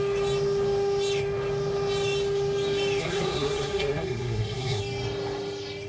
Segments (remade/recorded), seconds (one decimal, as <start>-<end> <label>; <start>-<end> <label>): 0.0-3.0 recorded; 3.0-4.8 remade; 4.8-5.9 recorded